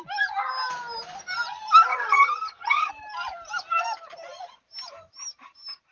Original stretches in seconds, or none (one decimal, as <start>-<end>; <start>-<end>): 0.0-1.9; 2.9-5.9